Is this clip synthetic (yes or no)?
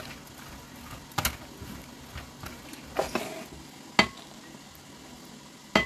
no